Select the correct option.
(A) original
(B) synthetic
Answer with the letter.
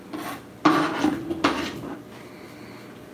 A